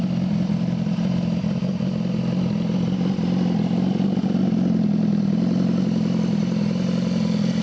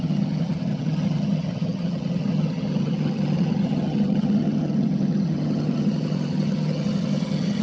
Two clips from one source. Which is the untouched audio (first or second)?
first